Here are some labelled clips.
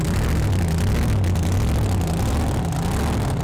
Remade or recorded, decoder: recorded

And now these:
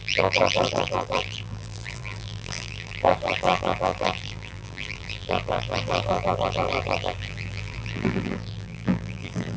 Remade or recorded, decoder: remade, vocoder, BigVGAN v2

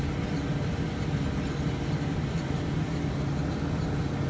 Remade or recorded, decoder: recorded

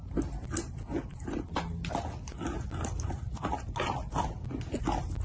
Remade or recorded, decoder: recorded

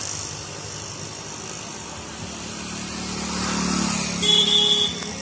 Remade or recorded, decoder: recorded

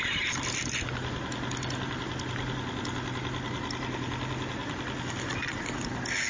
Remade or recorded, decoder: recorded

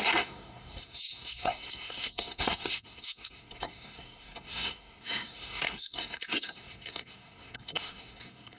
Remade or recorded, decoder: remade, codec, SNAC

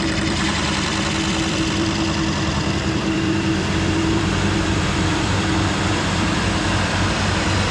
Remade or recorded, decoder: remade, vocoder, BigVGAN v2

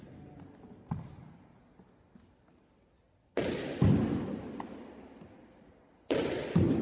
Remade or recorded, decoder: recorded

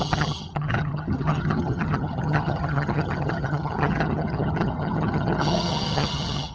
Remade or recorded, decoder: remade, vocoder, HiFi-GAN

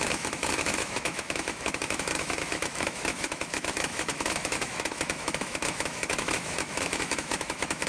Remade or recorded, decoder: remade, autoencoder, DAC-VAE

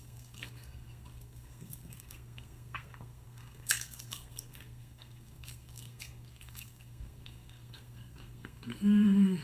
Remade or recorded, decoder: remade, codec, SNAC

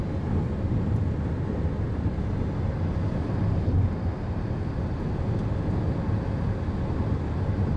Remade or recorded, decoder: recorded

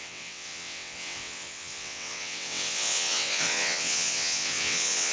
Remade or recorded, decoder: remade, vocoder, WaveNeXt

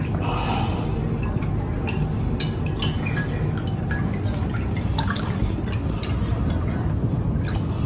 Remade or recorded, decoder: recorded